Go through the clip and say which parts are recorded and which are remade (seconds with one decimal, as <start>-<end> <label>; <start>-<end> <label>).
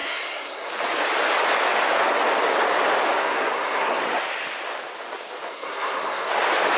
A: 0.0-0.7 remade; 0.7-3.2 recorded; 3.2-4.0 remade; 4.0-5.5 recorded; 5.5-6.3 remade; 6.3-6.8 recorded